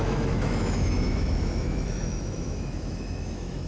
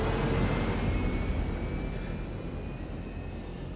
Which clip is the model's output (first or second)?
first